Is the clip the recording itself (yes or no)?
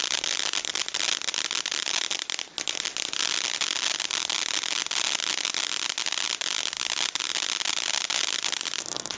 yes